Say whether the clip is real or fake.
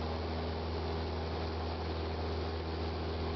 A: real